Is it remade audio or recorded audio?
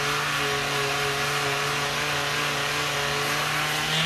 recorded